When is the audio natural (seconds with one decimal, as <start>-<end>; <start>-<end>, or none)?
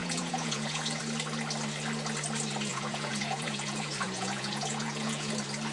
1.0-2.7; 5.3-5.7